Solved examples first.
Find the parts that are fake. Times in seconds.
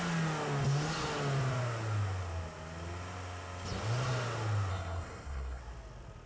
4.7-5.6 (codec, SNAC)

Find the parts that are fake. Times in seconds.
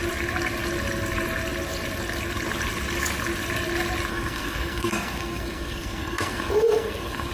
4.1-7.3 (codec, SNAC)